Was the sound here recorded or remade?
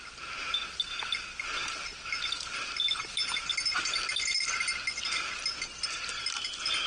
recorded